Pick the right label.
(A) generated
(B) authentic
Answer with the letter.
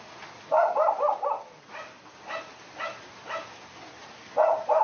B